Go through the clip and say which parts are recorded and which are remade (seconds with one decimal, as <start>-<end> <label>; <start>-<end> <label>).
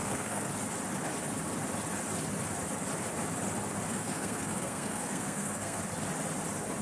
0.0-0.5 remade; 0.5-3.9 recorded; 3.9-5.8 remade; 5.8-6.8 recorded